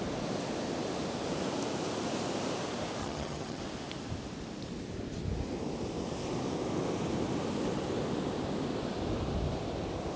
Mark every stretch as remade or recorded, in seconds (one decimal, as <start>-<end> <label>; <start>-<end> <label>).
0.0-3.0 recorded; 3.0-3.6 remade; 3.6-10.2 recorded